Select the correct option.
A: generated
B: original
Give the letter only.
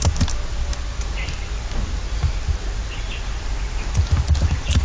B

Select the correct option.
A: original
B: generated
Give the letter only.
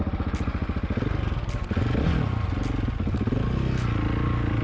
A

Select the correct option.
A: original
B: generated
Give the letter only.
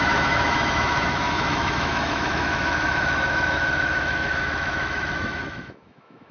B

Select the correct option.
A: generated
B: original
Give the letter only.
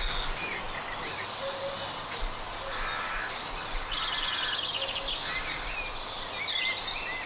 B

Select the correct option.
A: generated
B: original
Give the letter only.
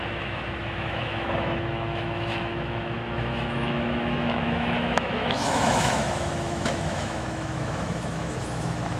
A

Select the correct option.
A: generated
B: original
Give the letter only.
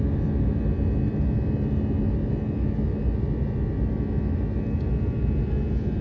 B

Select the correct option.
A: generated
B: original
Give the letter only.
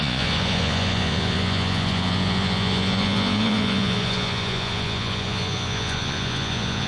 A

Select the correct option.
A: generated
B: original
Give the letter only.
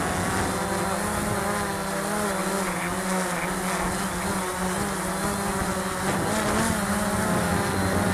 B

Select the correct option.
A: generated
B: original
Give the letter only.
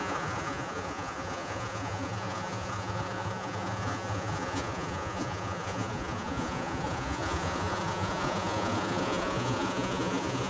A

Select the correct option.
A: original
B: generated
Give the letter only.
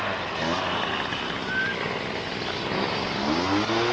A